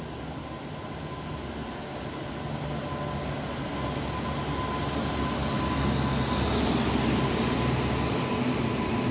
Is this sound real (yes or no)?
yes